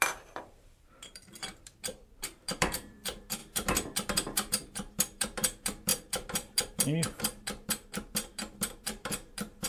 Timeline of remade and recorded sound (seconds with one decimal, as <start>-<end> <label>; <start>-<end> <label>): 0.0-9.7 remade